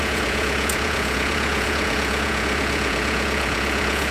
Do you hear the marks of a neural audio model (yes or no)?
yes